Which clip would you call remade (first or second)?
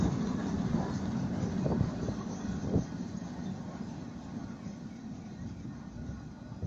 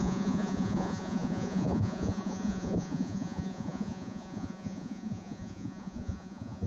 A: second